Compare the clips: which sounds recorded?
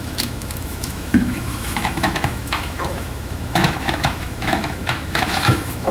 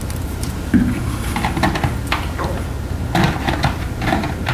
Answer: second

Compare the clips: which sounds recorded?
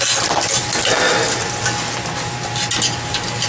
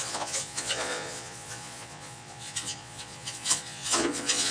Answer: first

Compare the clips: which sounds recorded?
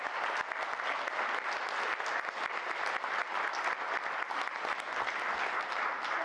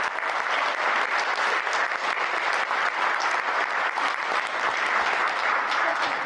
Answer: first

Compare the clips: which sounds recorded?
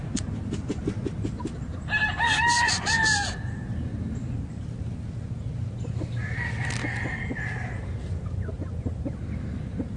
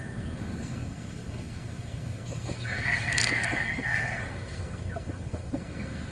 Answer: first